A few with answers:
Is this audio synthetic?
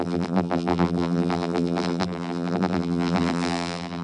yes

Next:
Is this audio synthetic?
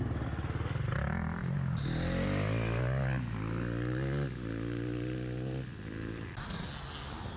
no